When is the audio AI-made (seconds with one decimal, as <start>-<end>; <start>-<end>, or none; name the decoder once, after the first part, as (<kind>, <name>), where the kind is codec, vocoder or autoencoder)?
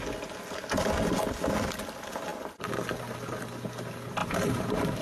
4.2-5.0 (vocoder, BigVGAN v2)